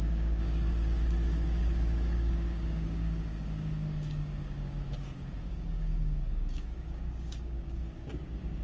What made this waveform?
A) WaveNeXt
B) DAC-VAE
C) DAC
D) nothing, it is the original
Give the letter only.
C